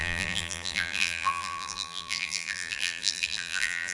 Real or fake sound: fake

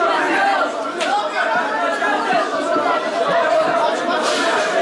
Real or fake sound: real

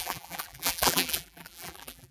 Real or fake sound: fake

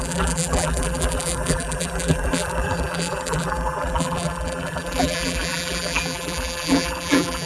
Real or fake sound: fake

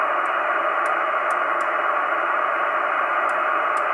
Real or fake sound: real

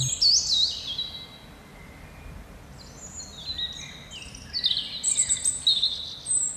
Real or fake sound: real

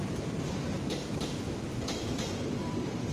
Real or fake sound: fake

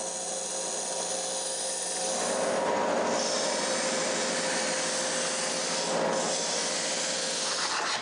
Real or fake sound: real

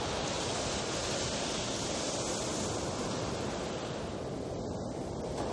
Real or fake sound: real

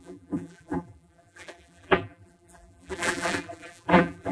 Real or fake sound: fake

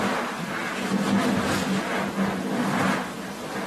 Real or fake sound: real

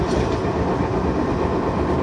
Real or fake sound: fake